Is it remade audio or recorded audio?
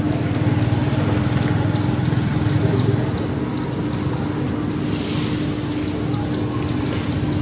recorded